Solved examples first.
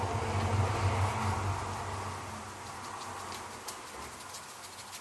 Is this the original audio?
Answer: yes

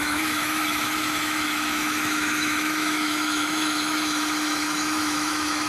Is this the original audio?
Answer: no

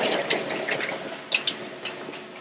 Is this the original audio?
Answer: yes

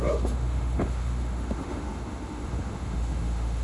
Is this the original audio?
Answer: no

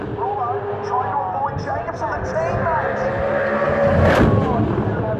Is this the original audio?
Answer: yes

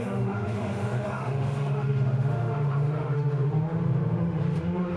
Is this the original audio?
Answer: no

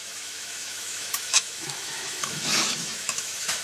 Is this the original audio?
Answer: no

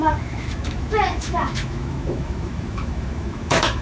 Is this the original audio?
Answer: no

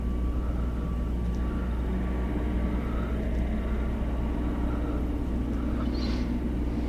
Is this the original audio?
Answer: yes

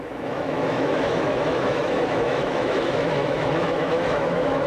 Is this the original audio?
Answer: no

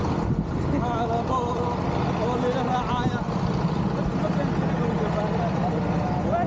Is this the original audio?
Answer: yes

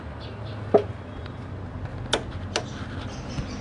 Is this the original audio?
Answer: yes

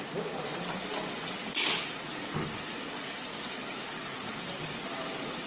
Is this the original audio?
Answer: yes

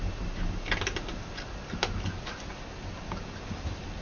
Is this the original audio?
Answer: yes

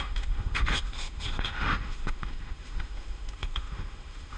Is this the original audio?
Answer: no